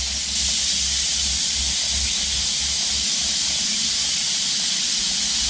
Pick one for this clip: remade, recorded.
recorded